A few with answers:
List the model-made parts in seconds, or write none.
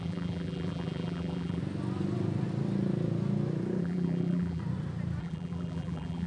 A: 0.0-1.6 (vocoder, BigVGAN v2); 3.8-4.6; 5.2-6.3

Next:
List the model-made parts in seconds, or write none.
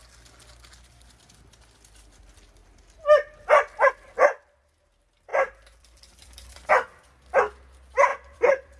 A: 5.3-6.7 (vocoder, BigVGAN v2); 8.1-8.8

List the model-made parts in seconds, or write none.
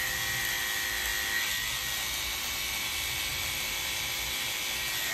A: 3.3-4.6 (vocoder, BigVGAN v2)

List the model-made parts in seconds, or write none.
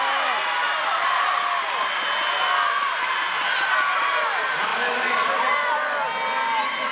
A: none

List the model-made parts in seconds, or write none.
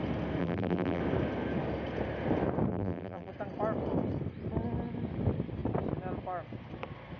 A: 0.4-1.0 (vocoder, BigVGAN v2); 2.7-3.3